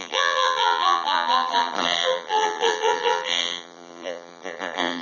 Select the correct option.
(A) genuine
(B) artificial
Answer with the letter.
B